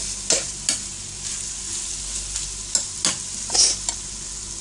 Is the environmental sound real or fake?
real